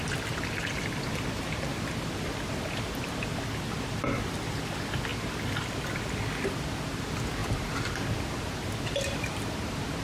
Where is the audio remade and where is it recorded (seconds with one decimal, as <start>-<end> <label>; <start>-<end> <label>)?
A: 0.0-10.0 remade